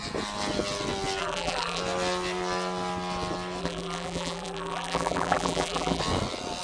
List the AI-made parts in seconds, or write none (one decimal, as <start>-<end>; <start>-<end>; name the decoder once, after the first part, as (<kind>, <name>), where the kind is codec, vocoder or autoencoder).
1.2-1.8 (vocoder, BigVGAN v2); 3.6-6.0